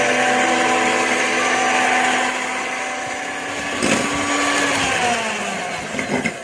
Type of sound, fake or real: real